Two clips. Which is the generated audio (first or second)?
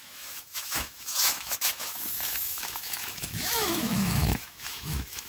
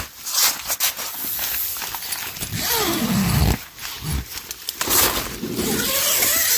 first